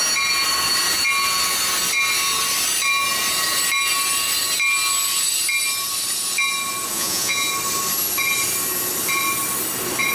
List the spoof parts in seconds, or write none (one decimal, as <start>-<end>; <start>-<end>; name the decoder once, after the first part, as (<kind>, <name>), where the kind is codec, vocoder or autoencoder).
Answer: 6.9-7.5 (vocoder, Vocos)